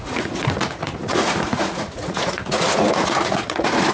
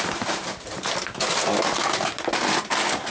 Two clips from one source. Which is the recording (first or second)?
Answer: second